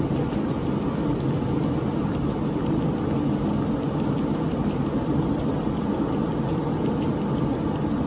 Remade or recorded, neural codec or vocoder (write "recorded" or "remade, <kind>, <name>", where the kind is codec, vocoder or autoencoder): recorded